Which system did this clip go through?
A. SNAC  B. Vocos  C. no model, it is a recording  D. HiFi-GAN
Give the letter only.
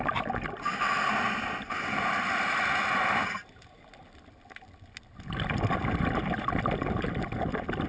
C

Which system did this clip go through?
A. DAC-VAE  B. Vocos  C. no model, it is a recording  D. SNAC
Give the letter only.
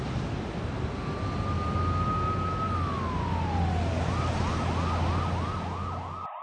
C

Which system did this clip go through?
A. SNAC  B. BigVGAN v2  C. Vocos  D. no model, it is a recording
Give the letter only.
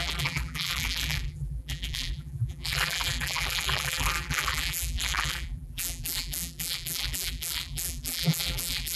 B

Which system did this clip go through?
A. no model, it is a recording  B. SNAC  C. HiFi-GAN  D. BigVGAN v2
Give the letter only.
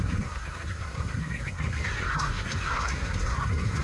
B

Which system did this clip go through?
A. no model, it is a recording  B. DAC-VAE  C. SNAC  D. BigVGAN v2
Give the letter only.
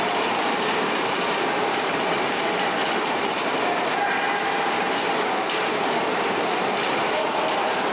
D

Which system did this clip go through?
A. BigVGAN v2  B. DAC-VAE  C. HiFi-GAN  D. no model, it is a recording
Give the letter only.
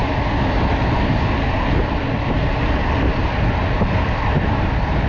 D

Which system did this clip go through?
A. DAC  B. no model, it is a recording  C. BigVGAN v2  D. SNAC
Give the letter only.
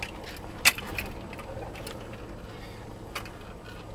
B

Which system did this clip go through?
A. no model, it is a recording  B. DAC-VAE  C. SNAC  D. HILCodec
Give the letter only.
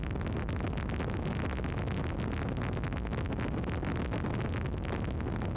A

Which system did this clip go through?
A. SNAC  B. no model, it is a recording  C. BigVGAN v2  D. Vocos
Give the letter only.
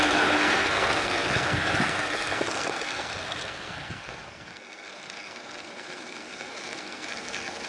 A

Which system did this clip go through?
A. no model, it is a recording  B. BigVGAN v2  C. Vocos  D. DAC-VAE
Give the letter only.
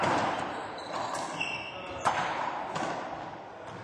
A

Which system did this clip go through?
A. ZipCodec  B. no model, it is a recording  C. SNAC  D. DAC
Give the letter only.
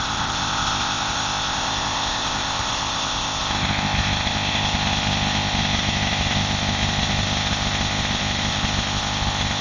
A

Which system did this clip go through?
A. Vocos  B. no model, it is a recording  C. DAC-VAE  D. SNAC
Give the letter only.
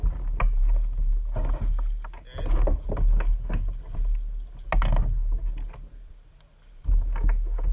B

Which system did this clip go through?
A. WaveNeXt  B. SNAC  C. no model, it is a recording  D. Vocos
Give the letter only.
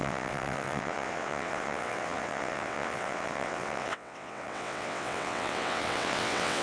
A